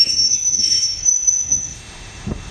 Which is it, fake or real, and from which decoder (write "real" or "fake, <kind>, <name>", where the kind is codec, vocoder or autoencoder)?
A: fake, autoencoder, DAC-VAE